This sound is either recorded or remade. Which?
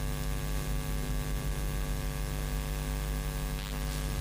recorded